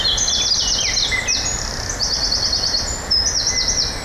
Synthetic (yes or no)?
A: no